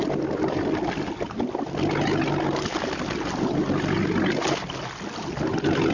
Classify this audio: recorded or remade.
recorded